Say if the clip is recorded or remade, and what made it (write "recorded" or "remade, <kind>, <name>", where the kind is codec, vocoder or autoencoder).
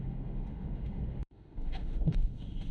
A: remade, autoencoder, DAC-VAE